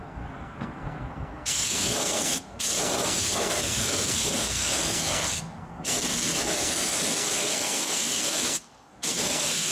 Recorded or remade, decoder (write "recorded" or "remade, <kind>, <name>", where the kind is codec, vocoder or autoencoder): remade, codec, SNAC